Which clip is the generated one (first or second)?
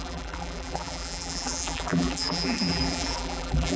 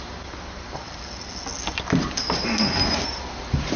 first